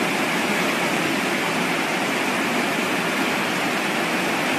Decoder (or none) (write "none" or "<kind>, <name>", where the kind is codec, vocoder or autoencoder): none